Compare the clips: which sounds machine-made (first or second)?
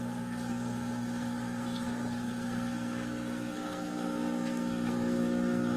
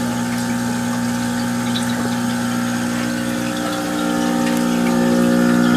first